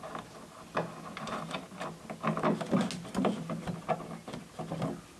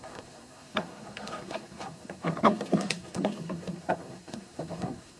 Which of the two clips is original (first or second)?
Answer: first